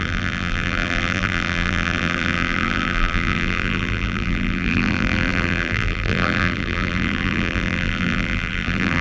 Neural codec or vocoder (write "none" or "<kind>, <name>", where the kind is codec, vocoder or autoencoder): vocoder, BigVGAN v2